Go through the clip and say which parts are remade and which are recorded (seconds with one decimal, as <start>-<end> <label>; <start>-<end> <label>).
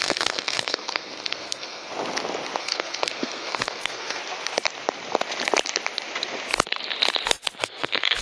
0.0-1.9 remade; 1.9-2.6 recorded; 2.6-4.2 remade; 4.2-7.6 recorded; 7.6-8.2 remade